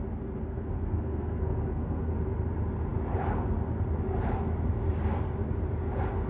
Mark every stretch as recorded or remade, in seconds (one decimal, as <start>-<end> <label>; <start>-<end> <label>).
0.0-0.5 recorded; 0.5-2.1 remade; 2.1-6.3 recorded